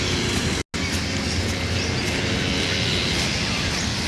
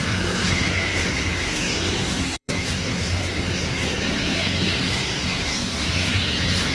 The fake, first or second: second